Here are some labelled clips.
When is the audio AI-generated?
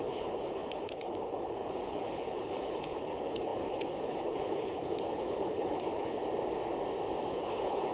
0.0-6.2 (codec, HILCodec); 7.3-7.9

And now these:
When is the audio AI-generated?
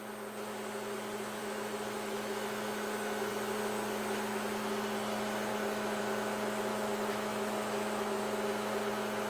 1.4-3.3 (autoencoder, DAC-VAE); 5.5-6.0; 6.7-8.2